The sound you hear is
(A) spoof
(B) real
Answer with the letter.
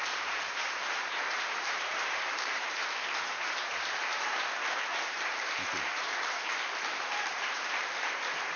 A